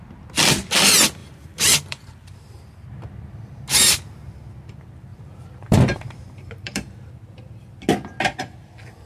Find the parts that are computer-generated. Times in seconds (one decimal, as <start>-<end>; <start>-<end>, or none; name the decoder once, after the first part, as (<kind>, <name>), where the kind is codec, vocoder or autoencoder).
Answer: 1.2-2.6 (vocoder, BigVGAN v2); 5.1-7.1